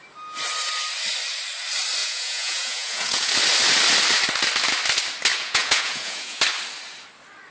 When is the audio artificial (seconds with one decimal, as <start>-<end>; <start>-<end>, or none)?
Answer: 2.0-3.3; 5.3-6.4